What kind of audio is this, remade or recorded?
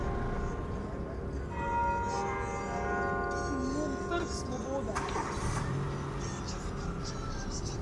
recorded